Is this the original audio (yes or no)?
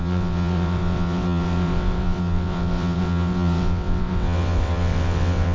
no